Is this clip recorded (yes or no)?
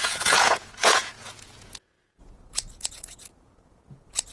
no